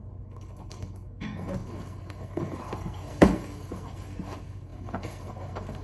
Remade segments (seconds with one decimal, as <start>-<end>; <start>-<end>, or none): 0.0-5.8